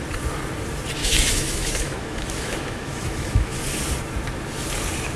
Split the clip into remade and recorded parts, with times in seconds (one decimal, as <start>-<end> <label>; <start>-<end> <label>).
0.0-1.0 recorded; 1.0-3.6 remade; 3.6-5.2 recorded